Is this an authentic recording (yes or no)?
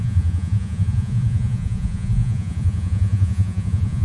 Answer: no